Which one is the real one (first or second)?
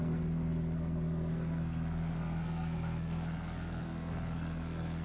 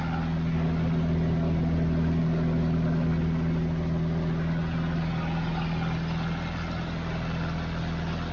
second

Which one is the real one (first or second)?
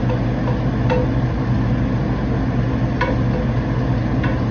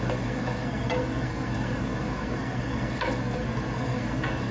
first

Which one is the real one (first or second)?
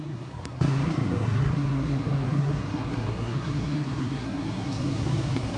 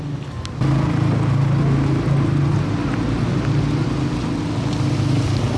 second